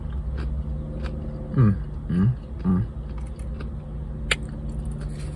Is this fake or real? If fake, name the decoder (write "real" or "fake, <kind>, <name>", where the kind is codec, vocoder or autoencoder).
real